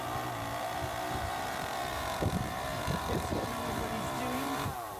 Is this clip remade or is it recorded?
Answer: remade